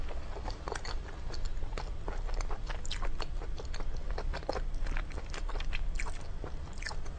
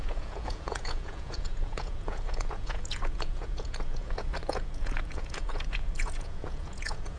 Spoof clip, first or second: second